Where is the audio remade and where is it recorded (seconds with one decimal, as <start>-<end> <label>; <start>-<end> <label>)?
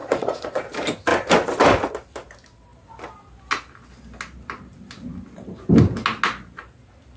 0.0-0.6 remade; 0.6-7.2 recorded